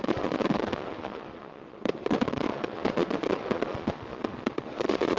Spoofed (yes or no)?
yes